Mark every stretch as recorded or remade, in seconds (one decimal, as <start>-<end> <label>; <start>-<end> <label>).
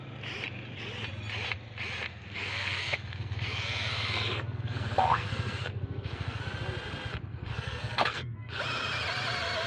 0.0-2.1 recorded; 2.1-6.4 remade; 6.4-7.3 recorded; 7.3-8.6 remade; 8.6-9.7 recorded